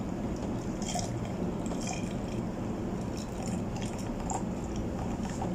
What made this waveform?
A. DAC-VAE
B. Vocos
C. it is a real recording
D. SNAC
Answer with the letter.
C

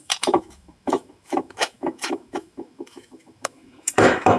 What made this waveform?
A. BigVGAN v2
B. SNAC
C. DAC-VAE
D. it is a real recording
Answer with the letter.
C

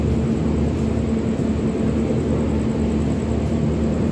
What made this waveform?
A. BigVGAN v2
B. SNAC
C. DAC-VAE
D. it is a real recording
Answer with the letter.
D